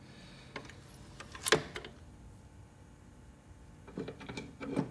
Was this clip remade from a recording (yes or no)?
no